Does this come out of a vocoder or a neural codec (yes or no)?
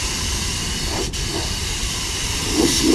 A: yes